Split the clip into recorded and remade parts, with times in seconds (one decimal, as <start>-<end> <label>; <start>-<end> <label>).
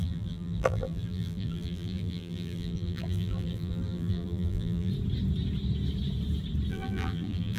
0.0-4.9 remade; 4.9-6.7 recorded; 6.7-7.6 remade